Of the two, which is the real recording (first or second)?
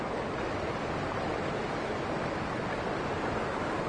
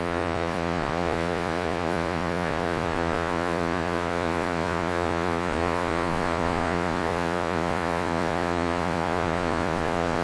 first